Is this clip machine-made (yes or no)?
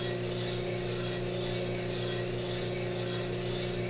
no